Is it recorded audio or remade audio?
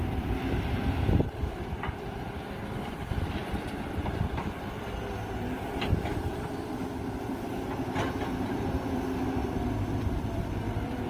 remade